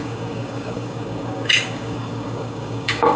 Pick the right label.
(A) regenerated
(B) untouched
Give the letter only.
A